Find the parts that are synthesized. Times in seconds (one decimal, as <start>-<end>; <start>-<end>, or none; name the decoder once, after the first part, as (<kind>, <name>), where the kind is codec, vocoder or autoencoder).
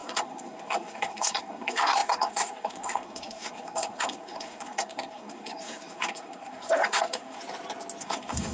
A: 0.0-7.4 (codec, SNAC); 8.0-8.5